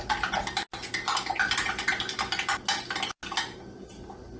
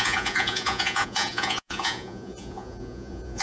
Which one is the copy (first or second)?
second